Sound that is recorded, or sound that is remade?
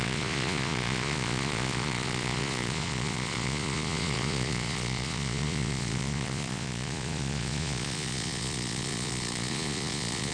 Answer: remade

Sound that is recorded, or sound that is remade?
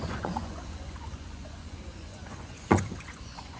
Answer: remade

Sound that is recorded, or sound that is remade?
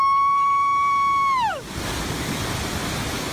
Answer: recorded